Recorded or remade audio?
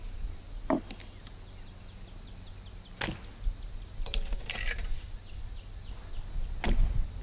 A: recorded